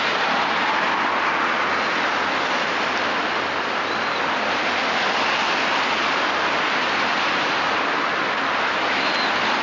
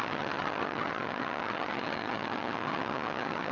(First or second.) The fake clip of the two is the second